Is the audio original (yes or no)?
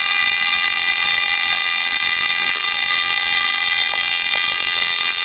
no